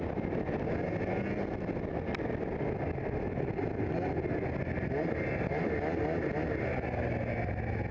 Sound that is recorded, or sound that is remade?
recorded